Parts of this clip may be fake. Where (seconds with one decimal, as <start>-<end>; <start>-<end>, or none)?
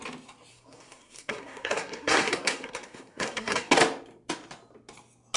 0.5-3.7